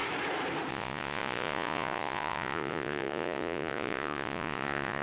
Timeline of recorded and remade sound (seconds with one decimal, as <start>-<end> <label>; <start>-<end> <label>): 0.0-0.7 recorded; 0.7-5.0 remade

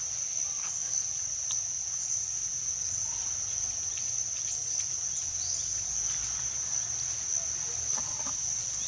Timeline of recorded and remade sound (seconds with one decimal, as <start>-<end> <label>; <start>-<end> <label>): 0.0-8.9 recorded

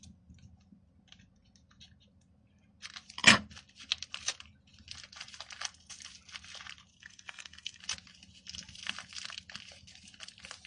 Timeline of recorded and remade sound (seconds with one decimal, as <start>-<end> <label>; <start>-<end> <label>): 0.0-6.9 recorded; 6.9-7.8 remade; 7.8-10.7 recorded

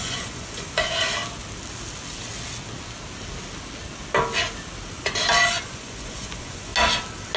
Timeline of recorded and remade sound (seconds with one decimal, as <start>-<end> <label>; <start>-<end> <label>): 0.0-1.2 remade; 1.2-5.6 recorded; 5.6-6.7 remade; 6.7-7.4 recorded

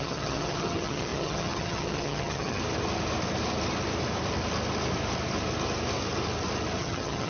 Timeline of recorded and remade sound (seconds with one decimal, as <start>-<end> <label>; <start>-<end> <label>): 0.0-2.6 remade; 2.6-6.8 recorded; 6.8-7.3 remade

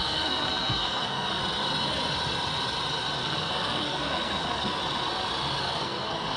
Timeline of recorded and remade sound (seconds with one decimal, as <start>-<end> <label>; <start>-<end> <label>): 0.0-1.4 remade; 1.4-3.2 recorded; 3.2-4.8 remade; 4.8-5.6 recorded; 5.6-6.4 remade